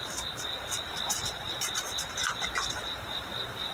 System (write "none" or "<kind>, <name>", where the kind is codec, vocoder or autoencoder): vocoder, BigVGAN v2